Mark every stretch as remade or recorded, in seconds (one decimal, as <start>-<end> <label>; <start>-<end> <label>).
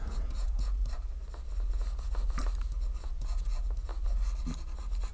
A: 0.0-0.8 remade; 0.8-3.0 recorded; 3.0-3.9 remade; 3.9-5.1 recorded